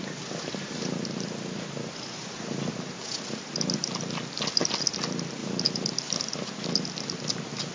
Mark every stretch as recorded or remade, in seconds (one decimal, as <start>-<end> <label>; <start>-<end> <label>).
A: 0.0-7.7 recorded